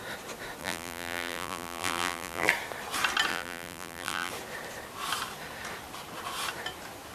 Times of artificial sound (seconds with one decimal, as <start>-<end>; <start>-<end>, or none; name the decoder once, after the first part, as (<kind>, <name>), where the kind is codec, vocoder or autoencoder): 0.6-2.5 (vocoder, BigVGAN v2); 3.3-4.3